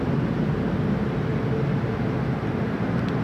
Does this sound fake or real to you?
real